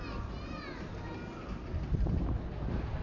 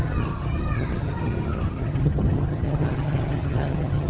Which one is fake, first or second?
second